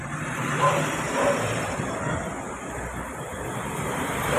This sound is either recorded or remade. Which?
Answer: remade